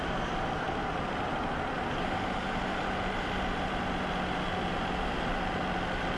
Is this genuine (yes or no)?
yes